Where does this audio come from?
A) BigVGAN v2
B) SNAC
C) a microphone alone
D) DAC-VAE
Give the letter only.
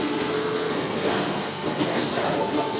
B